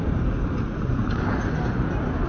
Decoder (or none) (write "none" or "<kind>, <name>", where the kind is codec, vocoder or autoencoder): none